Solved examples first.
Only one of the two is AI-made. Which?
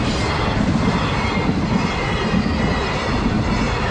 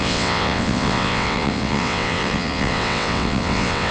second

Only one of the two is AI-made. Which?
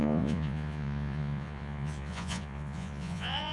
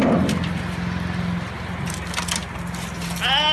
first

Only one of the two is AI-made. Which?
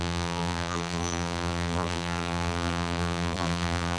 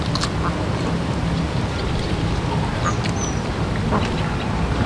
first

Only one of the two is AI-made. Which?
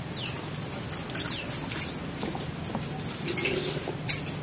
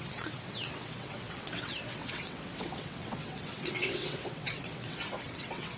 second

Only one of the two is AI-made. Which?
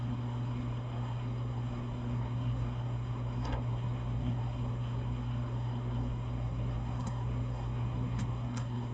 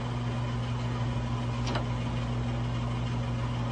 first